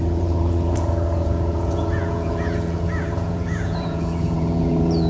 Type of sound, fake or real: fake